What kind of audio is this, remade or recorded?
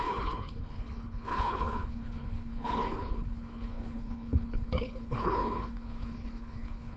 remade